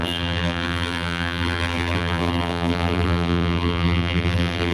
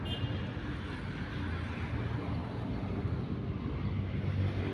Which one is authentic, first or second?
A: second